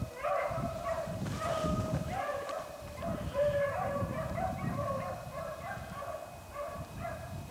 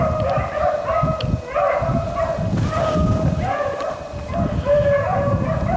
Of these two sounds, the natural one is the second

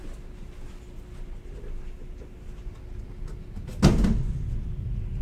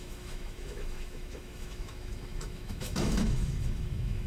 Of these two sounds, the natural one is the first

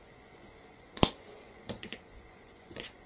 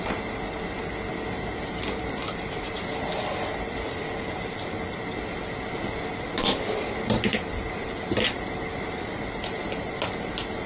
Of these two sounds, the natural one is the second